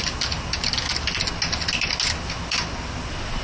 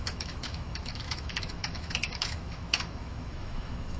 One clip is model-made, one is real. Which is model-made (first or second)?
second